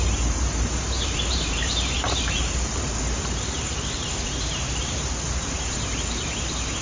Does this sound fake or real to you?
fake